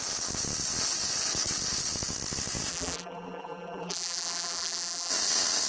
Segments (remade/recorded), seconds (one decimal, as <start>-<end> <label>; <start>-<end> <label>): 0.0-2.7 recorded; 2.7-5.1 remade; 5.1-5.7 recorded